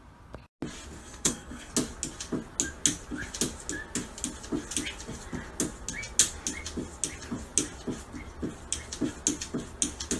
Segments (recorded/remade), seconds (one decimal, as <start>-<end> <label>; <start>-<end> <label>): 0.0-1.0 recorded; 1.0-1.7 remade; 1.7-10.2 recorded